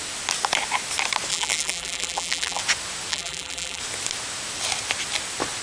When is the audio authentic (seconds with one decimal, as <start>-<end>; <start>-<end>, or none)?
0.0-1.3; 2.6-3.1; 3.8-5.6